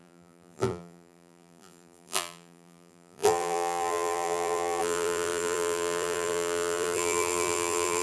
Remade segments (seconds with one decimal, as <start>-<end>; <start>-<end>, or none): 0.0-8.0